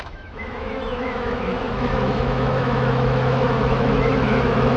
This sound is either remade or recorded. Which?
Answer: remade